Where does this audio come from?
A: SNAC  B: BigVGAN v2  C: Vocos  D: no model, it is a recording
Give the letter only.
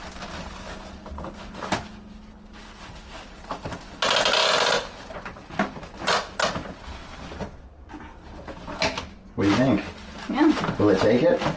D